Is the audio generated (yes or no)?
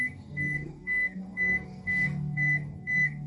yes